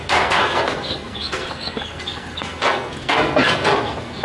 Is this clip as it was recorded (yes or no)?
no